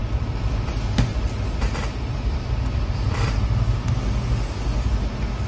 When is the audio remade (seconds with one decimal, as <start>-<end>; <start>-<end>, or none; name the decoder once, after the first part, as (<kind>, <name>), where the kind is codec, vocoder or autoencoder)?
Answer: 0.0-0.7 (vocoder, BigVGAN v2); 1.1-4.4